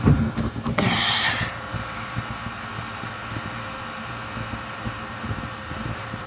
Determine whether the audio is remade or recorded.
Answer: remade